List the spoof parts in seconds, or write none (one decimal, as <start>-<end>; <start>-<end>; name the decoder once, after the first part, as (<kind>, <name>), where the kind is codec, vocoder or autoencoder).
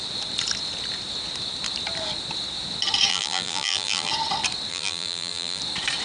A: 3.1-4.1 (vocoder, BigVGAN v2); 4.7-5.6